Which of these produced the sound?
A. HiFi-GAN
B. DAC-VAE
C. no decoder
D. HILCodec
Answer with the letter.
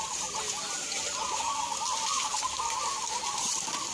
C